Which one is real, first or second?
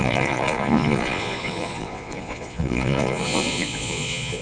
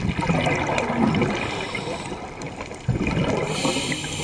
second